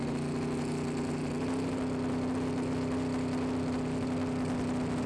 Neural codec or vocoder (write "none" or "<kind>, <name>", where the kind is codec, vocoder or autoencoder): none